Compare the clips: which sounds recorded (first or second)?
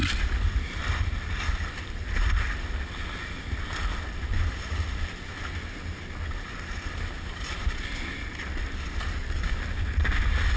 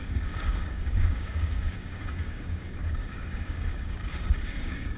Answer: first